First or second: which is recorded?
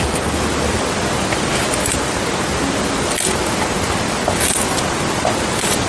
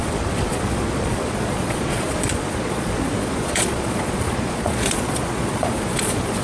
first